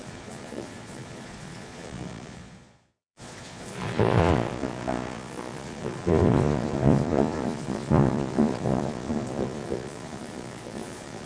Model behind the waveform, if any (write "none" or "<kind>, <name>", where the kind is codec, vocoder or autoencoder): vocoder, Vocos